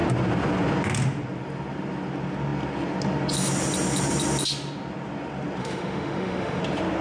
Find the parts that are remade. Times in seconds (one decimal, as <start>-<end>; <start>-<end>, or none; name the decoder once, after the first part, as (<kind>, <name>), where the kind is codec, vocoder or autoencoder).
5.6-6.6 (autoencoder, DAC-VAE)

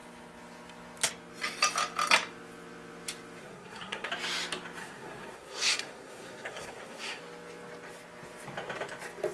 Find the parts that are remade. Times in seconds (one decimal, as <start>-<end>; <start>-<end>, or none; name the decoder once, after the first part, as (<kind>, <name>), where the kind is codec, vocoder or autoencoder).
3.4-4.1 (codec, SNAC); 4.8-7.2

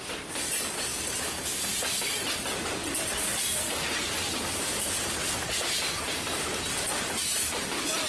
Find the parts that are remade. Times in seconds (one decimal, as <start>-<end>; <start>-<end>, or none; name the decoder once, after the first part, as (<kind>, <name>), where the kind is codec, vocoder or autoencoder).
0.9-2.0 (vocoder, BigVGAN v2); 2.8-3.6

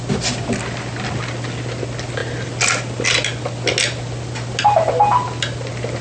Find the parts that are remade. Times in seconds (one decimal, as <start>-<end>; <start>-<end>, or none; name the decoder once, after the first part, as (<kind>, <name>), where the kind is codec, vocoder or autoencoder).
none

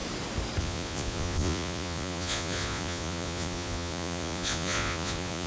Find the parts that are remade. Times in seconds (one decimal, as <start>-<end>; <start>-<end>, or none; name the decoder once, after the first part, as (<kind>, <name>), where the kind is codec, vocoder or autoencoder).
0.6-5.5 (vocoder, Vocos)

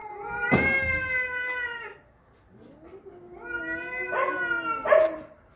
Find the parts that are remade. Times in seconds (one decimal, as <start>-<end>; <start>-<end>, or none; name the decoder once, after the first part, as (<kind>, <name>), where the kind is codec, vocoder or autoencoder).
none

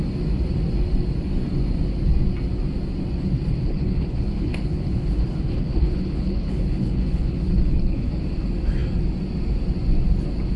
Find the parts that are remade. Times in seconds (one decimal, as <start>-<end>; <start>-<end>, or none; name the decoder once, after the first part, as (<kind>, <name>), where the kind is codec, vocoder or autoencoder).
3.6-8.1 (codec, HILCodec)

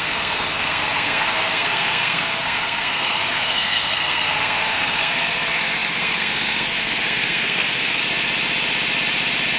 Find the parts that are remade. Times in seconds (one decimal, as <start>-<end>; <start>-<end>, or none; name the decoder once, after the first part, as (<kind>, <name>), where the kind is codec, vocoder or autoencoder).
0.0-8.0 (codec, SNAC)